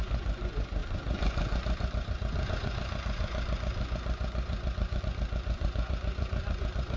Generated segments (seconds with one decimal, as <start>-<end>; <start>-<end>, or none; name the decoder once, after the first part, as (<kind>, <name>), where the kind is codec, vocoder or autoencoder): 0.0-7.0 (vocoder, Vocos)